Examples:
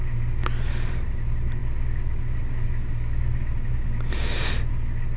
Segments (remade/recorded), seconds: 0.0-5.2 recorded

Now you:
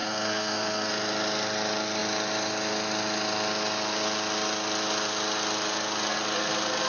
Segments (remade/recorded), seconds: 0.0-0.9 remade; 0.9-6.9 recorded

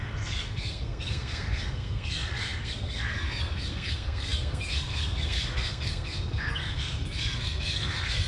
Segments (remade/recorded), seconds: 0.0-8.3 remade

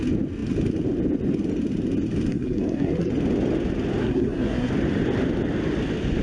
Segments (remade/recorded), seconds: 0.0-2.3 recorded; 2.3-3.1 remade; 3.1-4.0 recorded; 4.0-4.7 remade; 4.7-6.2 recorded

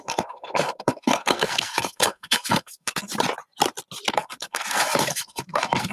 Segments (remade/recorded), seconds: 0.0-3.1 remade; 3.1-4.1 recorded; 4.1-5.9 remade

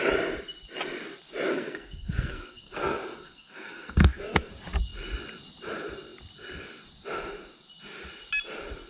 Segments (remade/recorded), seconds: 0.0-1.5 recorded; 1.5-4.5 remade; 4.5-8.9 recorded